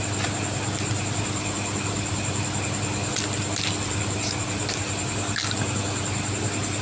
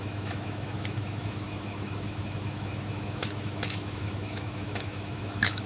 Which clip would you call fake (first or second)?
second